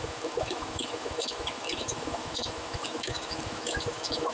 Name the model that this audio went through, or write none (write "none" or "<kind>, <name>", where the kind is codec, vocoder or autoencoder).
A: autoencoder, DAC-VAE